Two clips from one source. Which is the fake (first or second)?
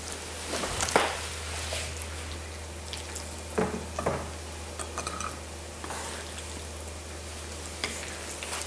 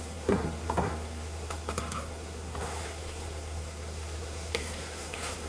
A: second